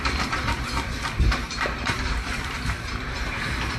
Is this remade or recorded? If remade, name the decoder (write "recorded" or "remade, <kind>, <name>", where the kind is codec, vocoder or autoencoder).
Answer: remade, vocoder, BigVGAN v2